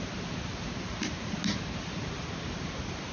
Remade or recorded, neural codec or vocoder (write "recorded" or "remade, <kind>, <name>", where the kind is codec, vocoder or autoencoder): recorded